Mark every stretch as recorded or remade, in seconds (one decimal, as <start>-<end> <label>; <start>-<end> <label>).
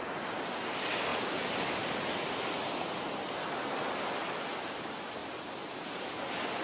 0.0-6.6 recorded